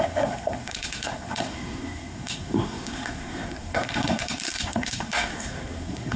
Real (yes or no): no